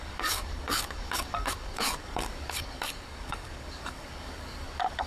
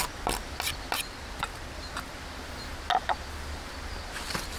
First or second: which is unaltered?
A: second